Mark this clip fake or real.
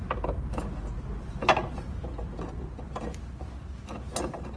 real